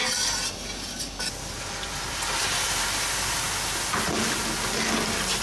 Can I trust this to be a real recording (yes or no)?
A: yes